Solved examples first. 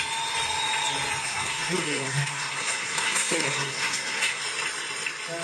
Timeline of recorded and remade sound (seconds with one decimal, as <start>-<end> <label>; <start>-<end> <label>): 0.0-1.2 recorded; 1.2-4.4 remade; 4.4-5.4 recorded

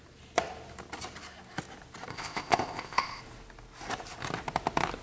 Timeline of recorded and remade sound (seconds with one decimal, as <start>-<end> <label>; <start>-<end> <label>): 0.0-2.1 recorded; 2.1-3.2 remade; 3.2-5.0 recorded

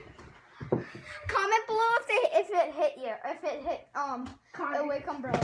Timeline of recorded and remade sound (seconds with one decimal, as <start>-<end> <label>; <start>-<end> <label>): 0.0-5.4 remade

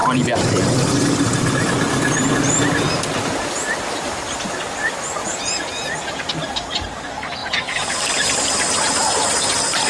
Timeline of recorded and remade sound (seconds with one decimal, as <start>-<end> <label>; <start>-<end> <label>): 0.0-5.2 recorded; 5.2-6.2 remade; 6.2-7.4 recorded; 7.4-8.0 remade; 8.0-9.9 recorded

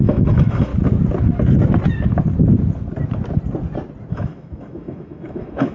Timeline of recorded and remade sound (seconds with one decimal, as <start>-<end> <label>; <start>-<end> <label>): 0.0-0.7 remade; 0.7-4.1 recorded; 4.1-5.7 remade

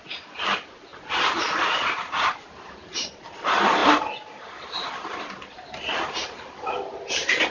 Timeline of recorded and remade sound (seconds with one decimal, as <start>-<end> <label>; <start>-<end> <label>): 0.0-7.5 recorded

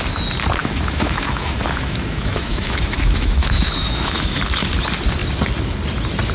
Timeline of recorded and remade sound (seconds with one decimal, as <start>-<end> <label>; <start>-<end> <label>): 0.0-0.6 recorded; 0.6-4.4 remade; 4.4-6.3 recorded